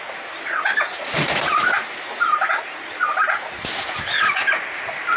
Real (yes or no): yes